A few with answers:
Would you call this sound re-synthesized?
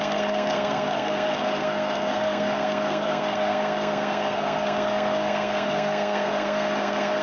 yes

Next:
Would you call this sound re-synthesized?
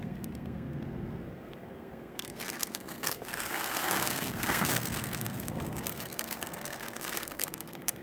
yes